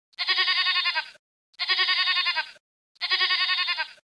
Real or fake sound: real